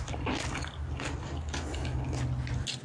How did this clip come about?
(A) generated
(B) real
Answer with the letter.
B